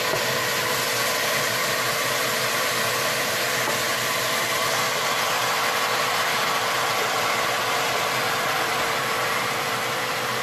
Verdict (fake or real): fake